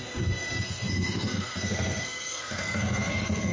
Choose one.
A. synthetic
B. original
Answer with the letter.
A